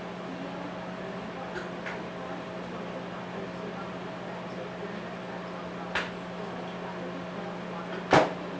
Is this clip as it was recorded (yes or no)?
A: yes